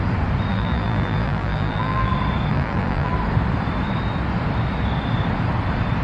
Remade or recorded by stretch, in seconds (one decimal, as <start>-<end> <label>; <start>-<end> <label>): 0.0-0.5 recorded; 0.5-2.1 remade; 2.1-2.5 recorded; 2.5-3.1 remade; 3.1-6.0 recorded